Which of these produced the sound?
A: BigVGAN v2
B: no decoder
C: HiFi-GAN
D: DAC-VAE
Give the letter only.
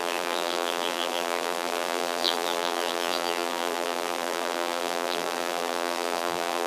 A